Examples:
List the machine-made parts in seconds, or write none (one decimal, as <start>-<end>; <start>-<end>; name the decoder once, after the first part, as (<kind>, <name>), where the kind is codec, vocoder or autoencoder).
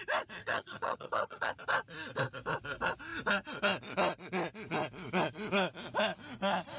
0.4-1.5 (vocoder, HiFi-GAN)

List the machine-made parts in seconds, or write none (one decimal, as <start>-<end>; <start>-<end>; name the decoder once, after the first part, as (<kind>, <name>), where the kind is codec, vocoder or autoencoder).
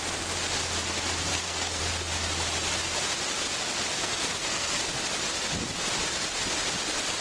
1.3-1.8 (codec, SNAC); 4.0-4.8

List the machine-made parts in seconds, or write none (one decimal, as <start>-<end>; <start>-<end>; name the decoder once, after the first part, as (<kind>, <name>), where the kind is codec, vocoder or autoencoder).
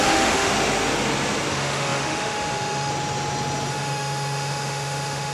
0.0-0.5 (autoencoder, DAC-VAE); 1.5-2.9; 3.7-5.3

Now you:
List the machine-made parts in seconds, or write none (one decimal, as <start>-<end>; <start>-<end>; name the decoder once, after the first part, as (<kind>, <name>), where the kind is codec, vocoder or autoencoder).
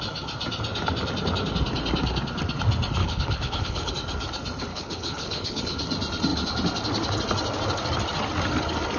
3.0-3.9 (codec, HILCodec); 4.7-5.6